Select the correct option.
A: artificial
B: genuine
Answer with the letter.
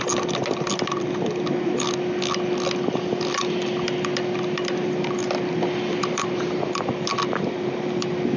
B